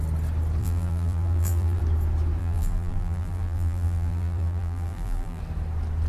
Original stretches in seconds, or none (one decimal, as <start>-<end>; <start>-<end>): 0.0-0.6; 1.8-2.4; 5.4-6.1